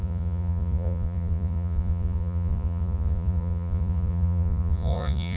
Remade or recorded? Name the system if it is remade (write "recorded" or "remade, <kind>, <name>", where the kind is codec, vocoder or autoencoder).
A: remade, vocoder, Vocos